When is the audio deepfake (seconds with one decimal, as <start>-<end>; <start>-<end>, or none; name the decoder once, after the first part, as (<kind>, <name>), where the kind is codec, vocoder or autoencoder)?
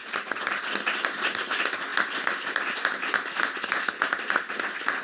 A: 0.0-0.6 (vocoder, BigVGAN v2)